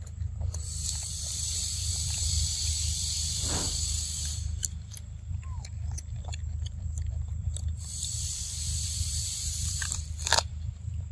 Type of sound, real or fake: fake